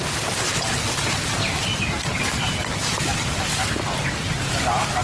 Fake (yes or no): no